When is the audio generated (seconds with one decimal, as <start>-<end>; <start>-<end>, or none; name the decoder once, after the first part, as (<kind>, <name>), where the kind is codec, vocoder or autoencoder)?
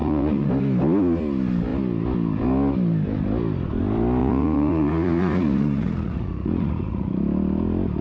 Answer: 0.0-0.5 (vocoder, Vocos); 4.2-7.1